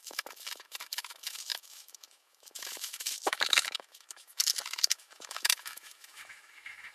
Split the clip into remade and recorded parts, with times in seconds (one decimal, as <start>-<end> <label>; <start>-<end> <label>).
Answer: 0.0-6.9 remade